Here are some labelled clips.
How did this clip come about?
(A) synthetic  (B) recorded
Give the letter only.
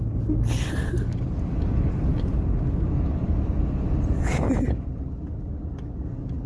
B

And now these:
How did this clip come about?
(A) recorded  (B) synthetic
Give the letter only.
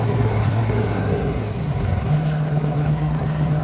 B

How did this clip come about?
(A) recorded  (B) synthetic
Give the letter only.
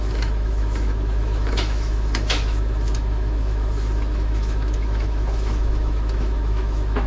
B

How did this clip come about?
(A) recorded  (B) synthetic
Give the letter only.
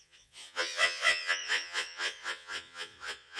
B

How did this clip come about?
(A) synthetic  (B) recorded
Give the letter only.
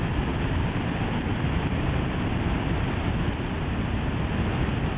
B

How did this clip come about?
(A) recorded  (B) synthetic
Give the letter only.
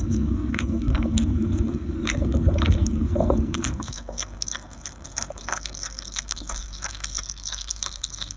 B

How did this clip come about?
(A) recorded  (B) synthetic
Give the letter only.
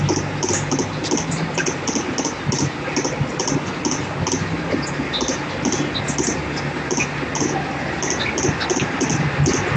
A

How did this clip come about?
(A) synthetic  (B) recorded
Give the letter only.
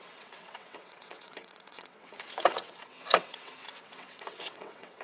A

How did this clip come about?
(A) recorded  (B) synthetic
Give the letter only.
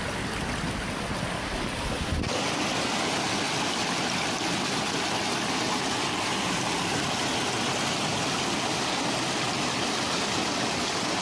A